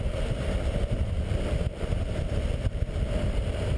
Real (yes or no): no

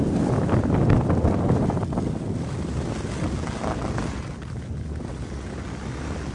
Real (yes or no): yes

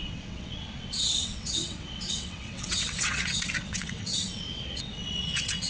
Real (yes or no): no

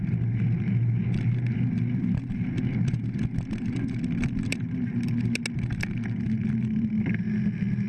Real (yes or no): yes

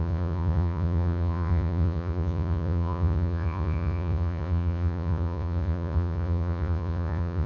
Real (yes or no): no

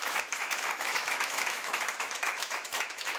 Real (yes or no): no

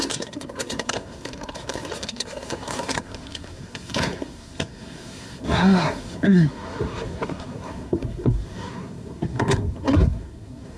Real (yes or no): no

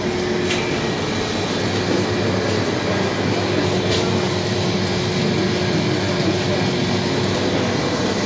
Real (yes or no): yes